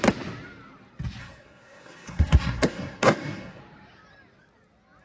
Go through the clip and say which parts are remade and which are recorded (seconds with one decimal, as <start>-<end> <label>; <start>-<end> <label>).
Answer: 0.0-1.2 recorded; 1.2-3.6 remade; 3.6-5.0 recorded